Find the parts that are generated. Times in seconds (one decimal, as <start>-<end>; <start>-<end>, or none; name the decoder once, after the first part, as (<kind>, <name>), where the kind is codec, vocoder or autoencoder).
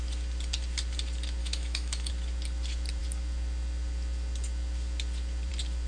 1.4-2.1 (autoencoder, DAC-VAE)